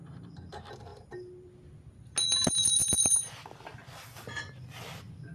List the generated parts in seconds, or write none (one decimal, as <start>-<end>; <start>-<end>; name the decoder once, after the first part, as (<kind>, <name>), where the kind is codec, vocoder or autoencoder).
0.9-1.8 (vocoder, BigVGAN v2); 2.8-4.4